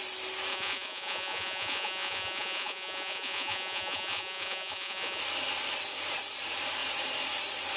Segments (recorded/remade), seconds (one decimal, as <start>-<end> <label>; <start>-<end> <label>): 0.0-0.5 recorded; 0.5-5.2 remade; 5.2-7.8 recorded